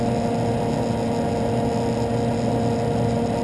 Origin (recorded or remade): recorded